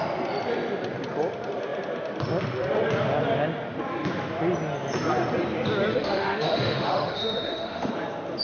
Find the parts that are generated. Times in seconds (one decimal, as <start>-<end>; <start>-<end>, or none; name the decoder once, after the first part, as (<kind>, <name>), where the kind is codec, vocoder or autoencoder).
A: 5.9-7.9 (autoencoder, DAC-VAE)